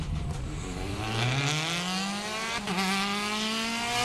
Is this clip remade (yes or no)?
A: no